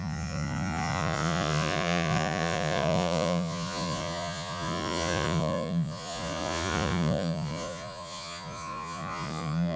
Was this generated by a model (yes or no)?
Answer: yes